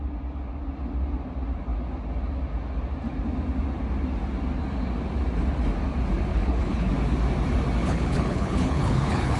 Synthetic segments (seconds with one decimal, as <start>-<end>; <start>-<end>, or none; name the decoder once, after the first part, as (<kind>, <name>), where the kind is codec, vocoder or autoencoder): 6.3-6.9 (codec, HILCodec); 7.8-9.4